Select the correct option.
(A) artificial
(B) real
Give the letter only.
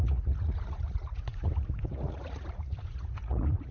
A